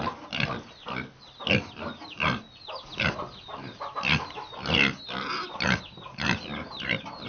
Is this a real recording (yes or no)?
yes